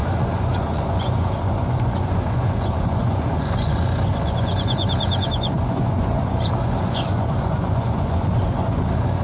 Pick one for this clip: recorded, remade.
remade